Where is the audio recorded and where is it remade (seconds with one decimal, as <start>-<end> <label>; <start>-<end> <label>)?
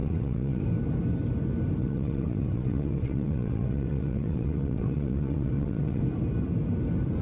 0.0-0.6 remade; 0.6-1.8 recorded; 1.8-6.0 remade; 6.0-7.2 recorded